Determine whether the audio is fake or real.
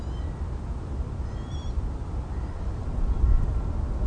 real